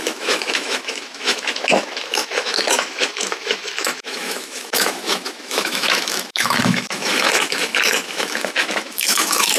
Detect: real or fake fake